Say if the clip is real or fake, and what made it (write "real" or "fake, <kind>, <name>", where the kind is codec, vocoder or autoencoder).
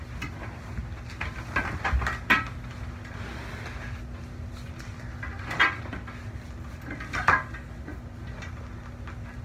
real